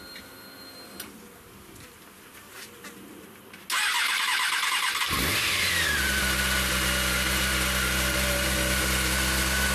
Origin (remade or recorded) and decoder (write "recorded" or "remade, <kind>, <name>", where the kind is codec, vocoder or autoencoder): recorded